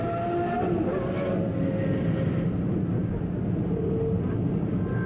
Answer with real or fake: real